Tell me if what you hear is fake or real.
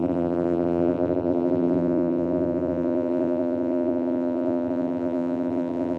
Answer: fake